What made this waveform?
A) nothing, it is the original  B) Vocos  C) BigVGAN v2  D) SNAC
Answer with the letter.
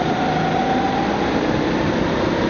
A